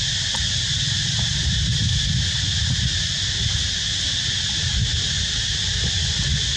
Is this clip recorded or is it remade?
recorded